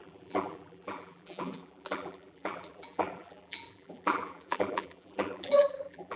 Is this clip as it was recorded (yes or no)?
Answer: no